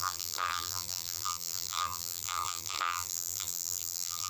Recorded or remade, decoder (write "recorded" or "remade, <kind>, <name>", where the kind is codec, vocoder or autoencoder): remade, vocoder, BigVGAN v2